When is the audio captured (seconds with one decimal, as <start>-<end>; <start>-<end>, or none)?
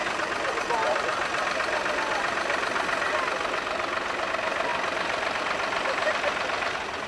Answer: 0.0-7.1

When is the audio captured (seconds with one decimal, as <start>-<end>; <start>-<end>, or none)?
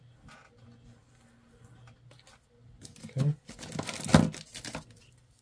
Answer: 0.0-5.4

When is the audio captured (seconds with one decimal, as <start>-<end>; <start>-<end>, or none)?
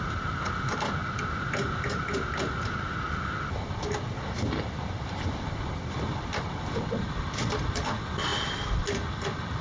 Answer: 0.0-9.6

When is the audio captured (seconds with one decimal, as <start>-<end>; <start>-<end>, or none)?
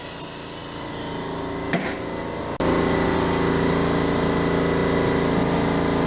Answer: 0.0-6.1